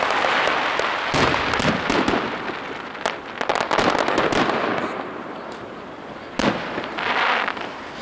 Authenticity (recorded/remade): recorded